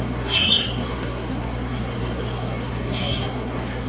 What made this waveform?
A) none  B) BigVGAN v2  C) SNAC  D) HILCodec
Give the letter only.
C